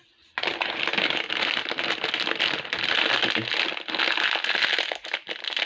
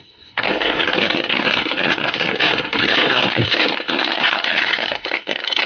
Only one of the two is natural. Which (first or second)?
first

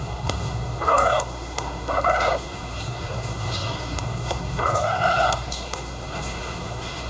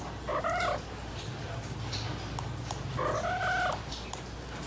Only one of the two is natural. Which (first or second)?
second